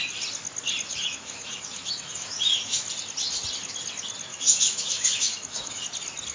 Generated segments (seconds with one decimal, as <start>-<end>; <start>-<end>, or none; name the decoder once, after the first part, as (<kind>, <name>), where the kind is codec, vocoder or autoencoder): 0.9-2.8 (autoencoder, DAC-VAE); 4.3-5.8

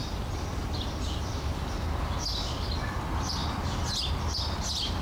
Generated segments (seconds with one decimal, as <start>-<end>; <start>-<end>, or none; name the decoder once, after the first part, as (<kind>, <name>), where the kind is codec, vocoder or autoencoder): none

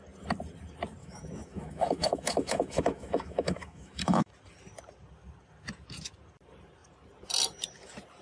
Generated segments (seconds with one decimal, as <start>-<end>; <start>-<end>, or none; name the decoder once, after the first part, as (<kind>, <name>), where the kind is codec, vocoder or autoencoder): 1.0-4.3 (autoencoder, DAC-VAE)

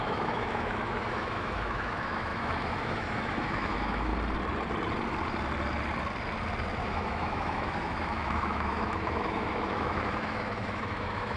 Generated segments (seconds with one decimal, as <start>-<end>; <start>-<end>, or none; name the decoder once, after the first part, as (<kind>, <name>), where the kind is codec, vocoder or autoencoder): 0.0-4.1 (autoencoder, DAC-VAE); 6.8-11.4

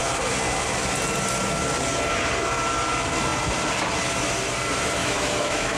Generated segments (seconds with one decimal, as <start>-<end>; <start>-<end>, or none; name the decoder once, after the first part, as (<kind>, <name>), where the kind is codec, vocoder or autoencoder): 5.0-5.8 (autoencoder, DAC-VAE)

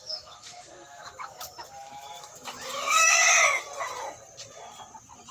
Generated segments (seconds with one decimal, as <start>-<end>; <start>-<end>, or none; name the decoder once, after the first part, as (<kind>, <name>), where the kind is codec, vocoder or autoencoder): 0.0-3.2 (autoencoder, DAC-VAE)

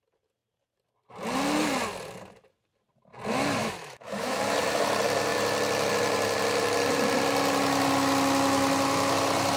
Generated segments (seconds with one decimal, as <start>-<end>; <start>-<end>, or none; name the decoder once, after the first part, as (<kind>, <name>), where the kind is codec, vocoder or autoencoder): 3.6-4.4 (autoencoder, DAC-VAE)

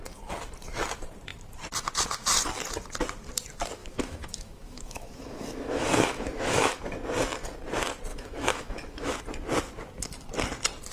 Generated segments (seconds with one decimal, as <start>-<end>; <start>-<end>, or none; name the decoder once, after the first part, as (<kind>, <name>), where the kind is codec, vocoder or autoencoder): 3.8-6.8 (autoencoder, DAC-VAE); 8.1-9.2